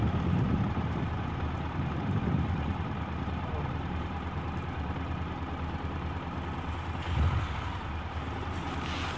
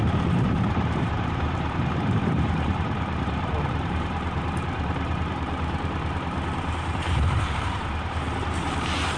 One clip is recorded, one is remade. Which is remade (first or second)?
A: second